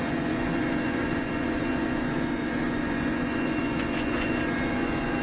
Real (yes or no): no